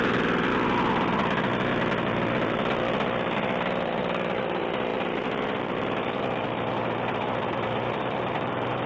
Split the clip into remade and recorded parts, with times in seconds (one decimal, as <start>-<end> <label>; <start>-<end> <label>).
0.0-4.9 recorded; 4.9-8.9 remade

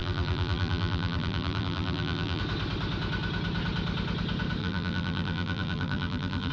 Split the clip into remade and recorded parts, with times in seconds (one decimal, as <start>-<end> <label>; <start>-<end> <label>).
0.0-2.4 remade; 2.4-4.6 recorded; 4.6-6.5 remade

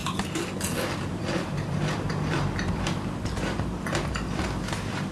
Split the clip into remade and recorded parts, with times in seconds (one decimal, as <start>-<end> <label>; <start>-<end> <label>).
0.0-5.1 remade

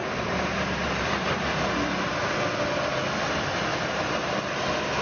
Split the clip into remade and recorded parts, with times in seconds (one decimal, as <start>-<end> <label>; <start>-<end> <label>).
0.0-1.9 remade; 1.9-3.7 recorded; 3.7-4.4 remade; 4.4-5.0 recorded

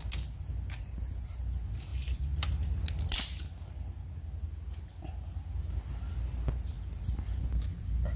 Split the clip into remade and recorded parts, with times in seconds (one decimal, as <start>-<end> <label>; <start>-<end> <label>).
0.0-8.2 recorded